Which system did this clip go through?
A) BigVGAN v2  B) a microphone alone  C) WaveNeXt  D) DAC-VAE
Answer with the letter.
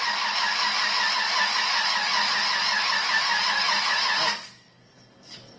B